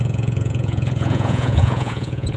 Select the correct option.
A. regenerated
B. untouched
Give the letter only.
A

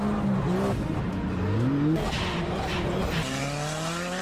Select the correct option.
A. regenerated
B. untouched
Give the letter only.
B